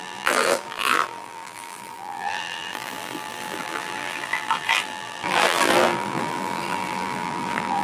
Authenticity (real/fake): fake